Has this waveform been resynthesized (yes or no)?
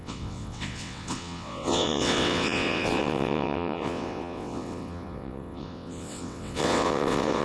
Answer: yes